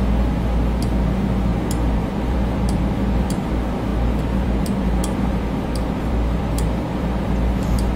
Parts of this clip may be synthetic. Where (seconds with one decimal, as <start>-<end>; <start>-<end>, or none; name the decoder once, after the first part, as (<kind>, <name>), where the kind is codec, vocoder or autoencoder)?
1.5-3.5 (vocoder, BigVGAN v2); 3.9-7.3